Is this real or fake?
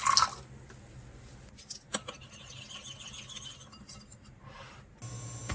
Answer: real